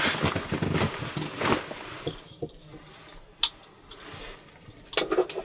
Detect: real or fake real